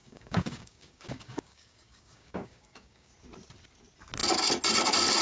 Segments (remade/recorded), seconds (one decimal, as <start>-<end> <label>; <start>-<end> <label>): 0.0-3.1 remade; 3.1-5.2 recorded